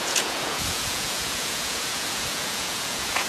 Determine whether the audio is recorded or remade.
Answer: remade